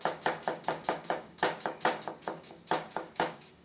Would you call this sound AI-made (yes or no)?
yes